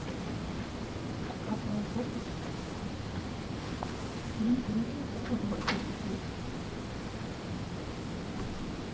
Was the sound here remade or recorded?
recorded